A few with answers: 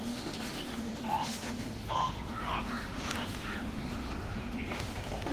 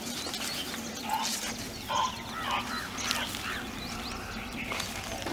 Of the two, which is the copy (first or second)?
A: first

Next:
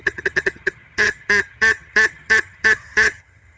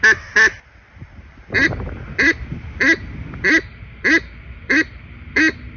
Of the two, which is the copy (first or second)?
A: first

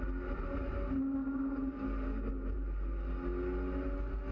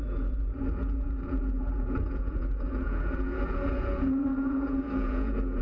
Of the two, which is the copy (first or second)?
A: second